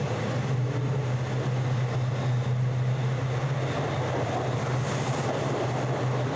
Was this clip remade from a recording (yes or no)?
no